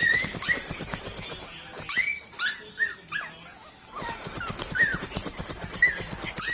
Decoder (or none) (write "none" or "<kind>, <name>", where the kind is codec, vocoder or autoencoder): none